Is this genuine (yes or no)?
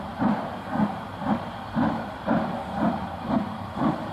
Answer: no